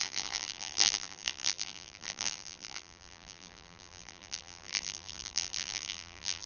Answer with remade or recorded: remade